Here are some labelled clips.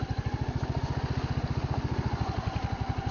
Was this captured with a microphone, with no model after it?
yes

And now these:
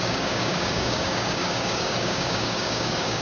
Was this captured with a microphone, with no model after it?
no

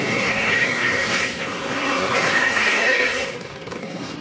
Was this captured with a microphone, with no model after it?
no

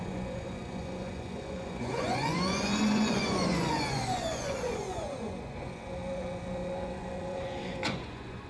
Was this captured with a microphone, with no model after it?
no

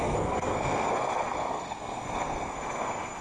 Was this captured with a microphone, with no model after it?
no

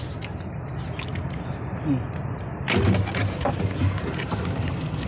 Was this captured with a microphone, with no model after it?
yes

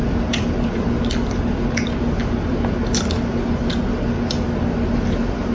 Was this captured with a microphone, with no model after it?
yes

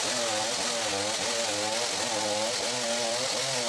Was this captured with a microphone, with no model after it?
yes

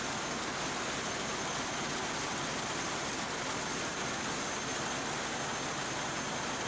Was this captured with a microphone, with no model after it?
yes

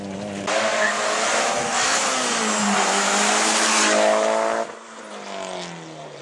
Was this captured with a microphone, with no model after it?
yes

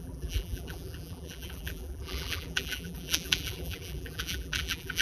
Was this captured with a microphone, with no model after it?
no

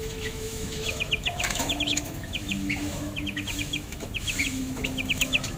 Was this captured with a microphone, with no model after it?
no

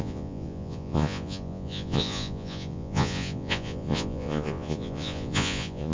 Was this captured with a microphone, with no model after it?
no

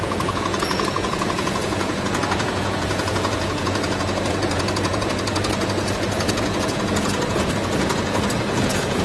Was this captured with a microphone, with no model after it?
no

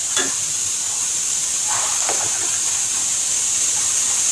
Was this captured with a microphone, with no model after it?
no